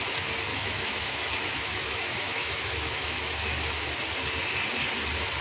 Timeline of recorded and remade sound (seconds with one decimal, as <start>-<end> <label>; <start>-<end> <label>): 0.0-0.5 recorded; 0.5-3.7 remade; 3.7-5.4 recorded